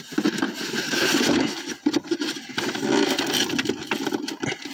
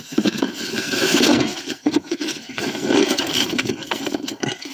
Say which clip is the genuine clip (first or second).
first